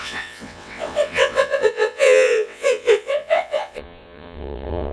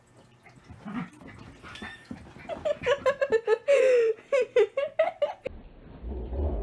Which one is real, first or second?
second